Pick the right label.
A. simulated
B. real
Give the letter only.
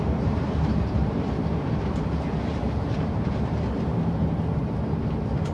A